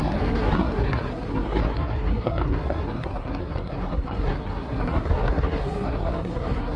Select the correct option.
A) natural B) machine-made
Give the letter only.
B